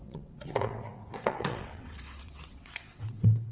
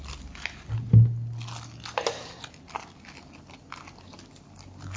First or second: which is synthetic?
first